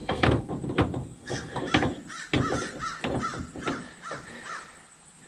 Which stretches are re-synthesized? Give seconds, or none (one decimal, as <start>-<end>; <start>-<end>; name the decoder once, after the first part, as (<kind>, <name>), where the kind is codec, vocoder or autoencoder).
0.0-0.5 (codec, SNAC); 1.0-1.6